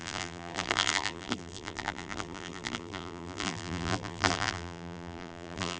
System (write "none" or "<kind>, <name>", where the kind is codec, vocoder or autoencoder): vocoder, BigVGAN v2